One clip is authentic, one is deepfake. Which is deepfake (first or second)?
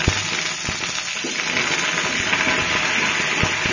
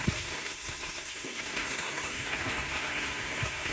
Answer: second